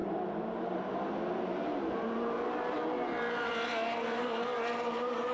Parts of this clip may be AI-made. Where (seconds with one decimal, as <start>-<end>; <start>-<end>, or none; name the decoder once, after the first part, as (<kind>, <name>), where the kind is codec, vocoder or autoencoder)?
0.0-1.0 (vocoder, BigVGAN v2); 1.5-3.5